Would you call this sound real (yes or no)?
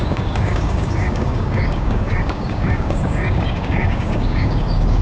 no